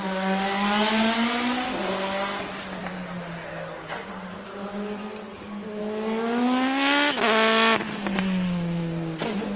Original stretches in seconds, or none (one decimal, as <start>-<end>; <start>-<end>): 0.0-9.6